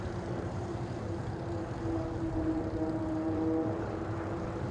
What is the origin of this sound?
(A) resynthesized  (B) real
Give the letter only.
A